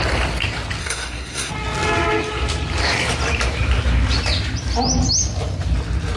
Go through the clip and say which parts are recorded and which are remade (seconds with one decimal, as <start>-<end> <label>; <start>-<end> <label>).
0.0-0.8 recorded; 0.8-1.5 remade; 1.5-6.2 recorded